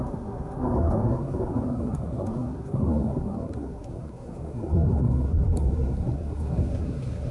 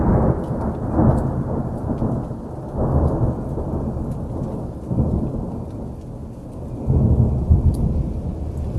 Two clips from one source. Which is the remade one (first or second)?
first